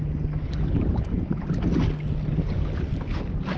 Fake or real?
real